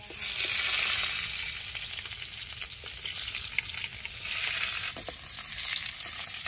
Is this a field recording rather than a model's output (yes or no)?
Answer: yes